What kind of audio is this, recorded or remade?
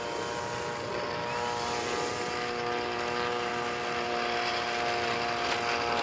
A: recorded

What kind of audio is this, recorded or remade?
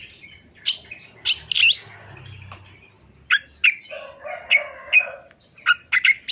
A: recorded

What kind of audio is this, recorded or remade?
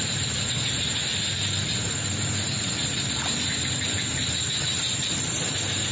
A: recorded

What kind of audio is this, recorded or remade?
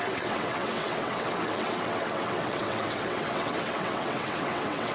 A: remade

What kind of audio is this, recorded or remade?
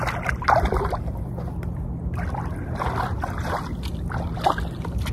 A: recorded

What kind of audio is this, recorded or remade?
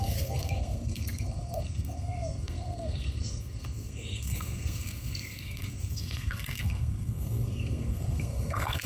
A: remade